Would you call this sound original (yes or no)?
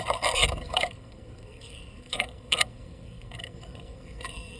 no